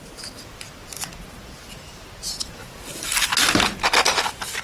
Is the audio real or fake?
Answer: real